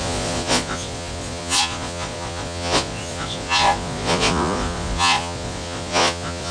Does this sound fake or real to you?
fake